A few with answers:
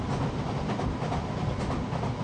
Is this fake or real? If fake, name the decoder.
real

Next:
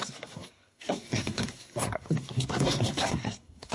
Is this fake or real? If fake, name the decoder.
fake, codec, SNAC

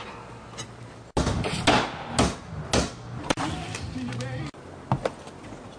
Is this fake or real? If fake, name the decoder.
real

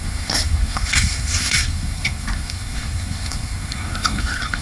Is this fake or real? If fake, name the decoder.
fake, codec, SNAC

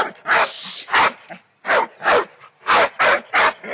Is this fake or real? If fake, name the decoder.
real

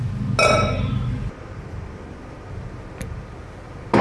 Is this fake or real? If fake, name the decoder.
real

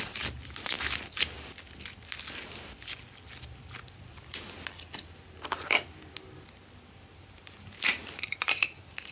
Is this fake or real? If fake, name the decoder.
real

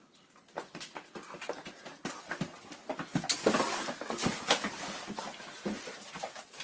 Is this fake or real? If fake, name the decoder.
real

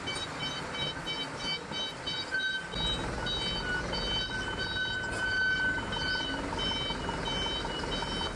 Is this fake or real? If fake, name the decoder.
real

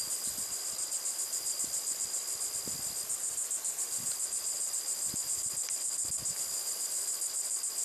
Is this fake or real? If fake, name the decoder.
real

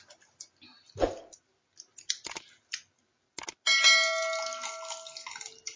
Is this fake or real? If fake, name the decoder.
real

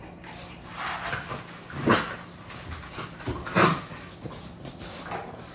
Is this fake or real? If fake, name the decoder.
real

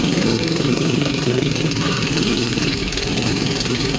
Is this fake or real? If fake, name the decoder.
fake, codec, SNAC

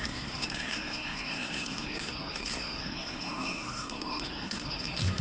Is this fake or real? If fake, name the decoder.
fake, codec, SNAC